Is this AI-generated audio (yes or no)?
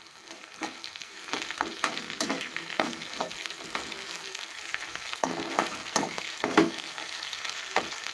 yes